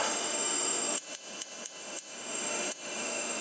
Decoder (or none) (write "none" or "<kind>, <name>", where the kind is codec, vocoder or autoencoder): autoencoder, DAC-VAE